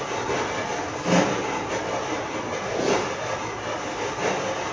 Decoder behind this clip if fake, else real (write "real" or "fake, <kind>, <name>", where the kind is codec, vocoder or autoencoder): real